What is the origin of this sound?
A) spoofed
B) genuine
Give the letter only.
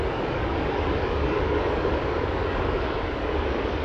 A